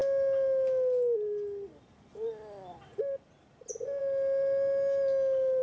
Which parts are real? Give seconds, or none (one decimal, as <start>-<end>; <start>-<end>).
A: 0.0-5.6